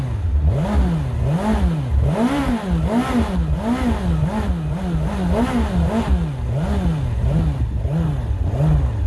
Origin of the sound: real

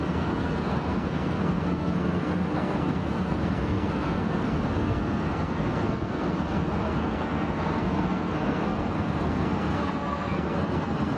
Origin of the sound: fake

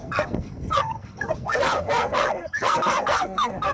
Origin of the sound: fake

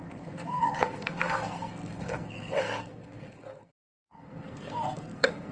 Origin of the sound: fake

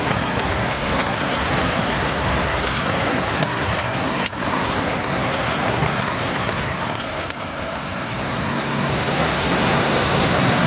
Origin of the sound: fake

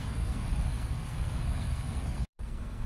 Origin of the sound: fake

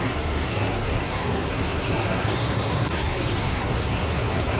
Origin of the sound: fake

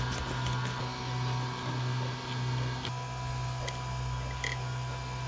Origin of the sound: real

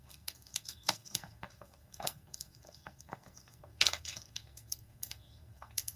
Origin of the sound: fake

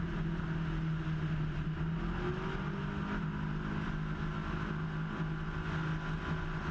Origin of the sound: real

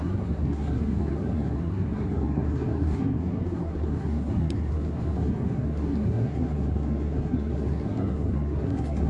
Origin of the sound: fake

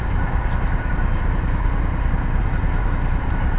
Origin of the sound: real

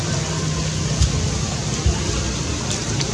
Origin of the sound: real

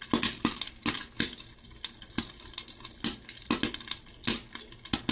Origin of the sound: real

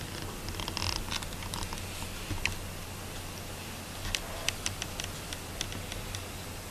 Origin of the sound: real